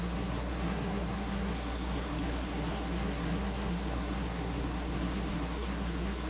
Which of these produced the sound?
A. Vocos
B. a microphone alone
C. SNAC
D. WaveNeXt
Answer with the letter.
C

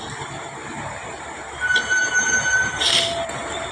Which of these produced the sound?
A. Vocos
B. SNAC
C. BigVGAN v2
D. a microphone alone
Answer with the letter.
C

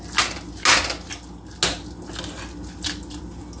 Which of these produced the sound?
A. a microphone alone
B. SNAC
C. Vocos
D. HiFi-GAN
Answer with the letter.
A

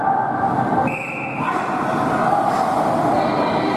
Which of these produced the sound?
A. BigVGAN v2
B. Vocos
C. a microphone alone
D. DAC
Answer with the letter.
C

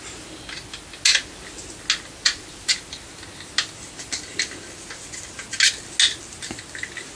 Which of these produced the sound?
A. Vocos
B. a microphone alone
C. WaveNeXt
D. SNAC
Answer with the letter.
B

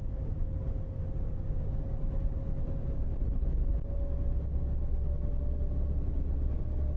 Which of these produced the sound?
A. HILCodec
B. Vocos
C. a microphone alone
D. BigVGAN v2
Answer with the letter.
C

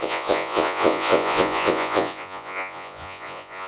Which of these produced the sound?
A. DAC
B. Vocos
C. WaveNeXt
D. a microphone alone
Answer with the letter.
B